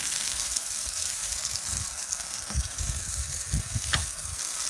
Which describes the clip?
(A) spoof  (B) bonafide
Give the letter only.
A